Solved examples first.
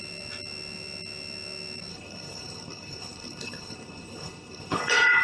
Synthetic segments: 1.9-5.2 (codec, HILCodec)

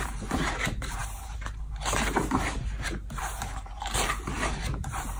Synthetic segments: 0.0-5.2 (vocoder, BigVGAN v2)

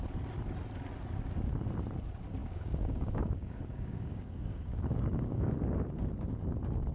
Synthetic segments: 2.4-5.5 (codec, DAC)

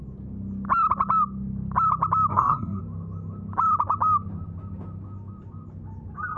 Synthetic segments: 2.3-2.8 (codec, SNAC)

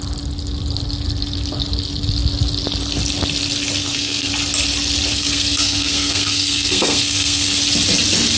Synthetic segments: 3.8-4.3 (codec, SNAC); 5.1-7.6

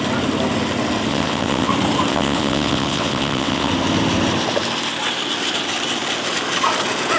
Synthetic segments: 1.1-1.7 (vocoder, WaveNeXt); 2.1-3.7